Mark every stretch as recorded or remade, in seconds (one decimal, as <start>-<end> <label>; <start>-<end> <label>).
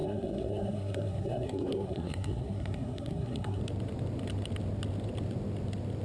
0.0-3.6 remade; 3.6-6.0 recorded